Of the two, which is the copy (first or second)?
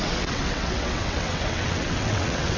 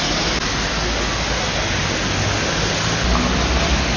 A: first